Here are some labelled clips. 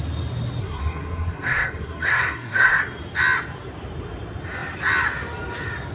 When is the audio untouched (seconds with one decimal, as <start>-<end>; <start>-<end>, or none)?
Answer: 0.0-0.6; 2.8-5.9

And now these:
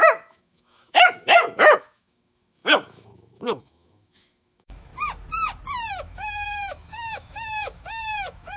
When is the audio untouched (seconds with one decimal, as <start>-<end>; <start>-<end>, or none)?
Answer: 4.9-5.9

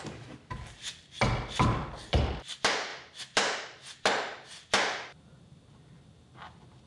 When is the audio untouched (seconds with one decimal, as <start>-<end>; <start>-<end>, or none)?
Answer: 0.0-6.9